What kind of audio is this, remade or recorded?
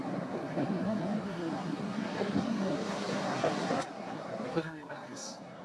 remade